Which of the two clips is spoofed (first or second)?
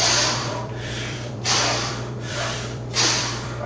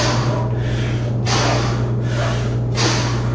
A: first